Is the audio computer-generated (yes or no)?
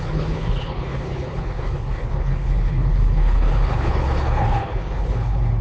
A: yes